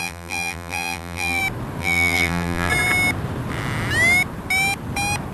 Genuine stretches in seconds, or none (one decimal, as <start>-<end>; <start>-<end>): 1.4-1.8; 2.7-5.3